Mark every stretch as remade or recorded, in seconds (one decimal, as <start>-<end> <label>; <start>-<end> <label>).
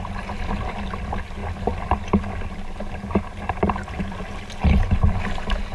0.0-5.7 recorded